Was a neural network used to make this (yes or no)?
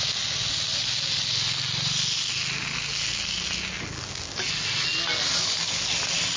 no